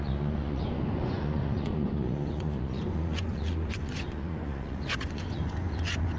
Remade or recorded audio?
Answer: remade